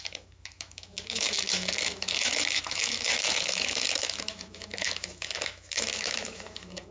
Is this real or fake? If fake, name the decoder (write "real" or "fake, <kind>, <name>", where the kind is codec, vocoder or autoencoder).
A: fake, autoencoder, DAC-VAE